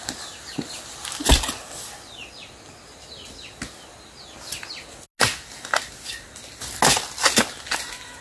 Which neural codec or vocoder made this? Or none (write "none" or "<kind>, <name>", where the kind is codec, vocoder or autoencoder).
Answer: none